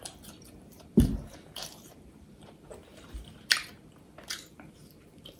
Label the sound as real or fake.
fake